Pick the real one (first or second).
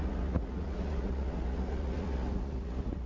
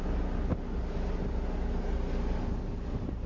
second